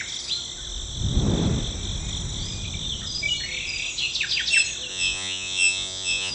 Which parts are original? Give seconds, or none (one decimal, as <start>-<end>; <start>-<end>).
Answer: 0.0-4.9